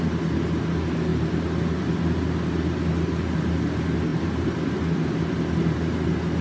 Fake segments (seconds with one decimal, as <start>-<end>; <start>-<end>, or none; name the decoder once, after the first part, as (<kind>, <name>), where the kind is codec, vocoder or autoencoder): 4.1-4.7 (vocoder, BigVGAN v2)